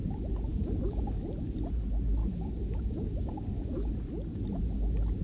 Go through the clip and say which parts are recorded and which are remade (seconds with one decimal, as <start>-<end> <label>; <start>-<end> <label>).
0.0-0.5 recorded; 0.5-1.2 remade; 1.2-2.2 recorded; 2.2-3.9 remade; 3.9-5.2 recorded